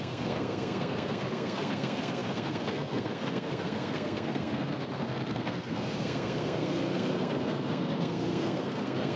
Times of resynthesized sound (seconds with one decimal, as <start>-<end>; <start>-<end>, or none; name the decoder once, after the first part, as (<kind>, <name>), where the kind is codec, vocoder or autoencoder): 0.0-9.2 (codec, SNAC)